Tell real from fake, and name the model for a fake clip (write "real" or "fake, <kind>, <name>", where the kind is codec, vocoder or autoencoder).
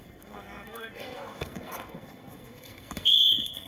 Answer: fake, codec, SNAC